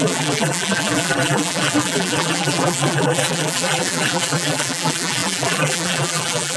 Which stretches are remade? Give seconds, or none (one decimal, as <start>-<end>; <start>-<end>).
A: 0.0-6.6